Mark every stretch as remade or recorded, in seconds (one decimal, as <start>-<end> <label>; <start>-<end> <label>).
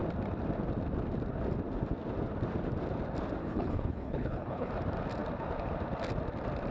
0.0-3.4 recorded; 3.4-4.7 remade; 4.7-6.7 recorded